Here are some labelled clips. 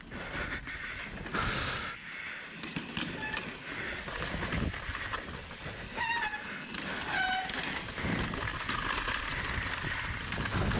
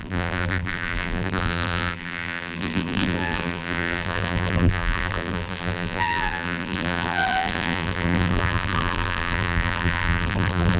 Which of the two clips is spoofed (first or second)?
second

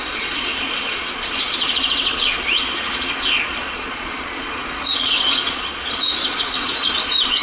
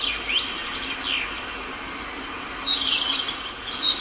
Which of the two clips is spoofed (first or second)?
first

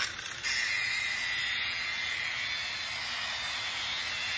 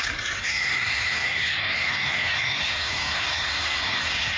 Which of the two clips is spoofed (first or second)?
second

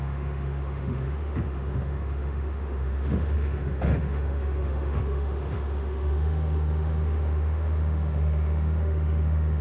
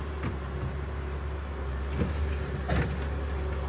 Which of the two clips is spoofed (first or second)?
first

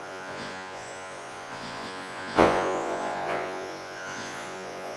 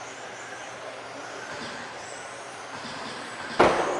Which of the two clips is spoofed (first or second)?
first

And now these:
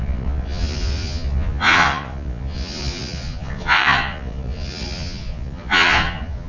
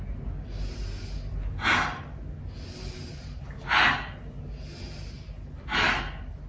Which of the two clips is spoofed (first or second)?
first